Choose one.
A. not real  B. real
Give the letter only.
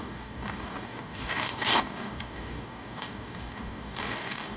A